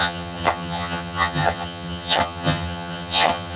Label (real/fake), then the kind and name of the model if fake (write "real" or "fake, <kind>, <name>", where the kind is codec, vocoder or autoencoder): fake, vocoder, HiFi-GAN